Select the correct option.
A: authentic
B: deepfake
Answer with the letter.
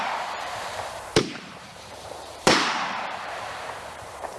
B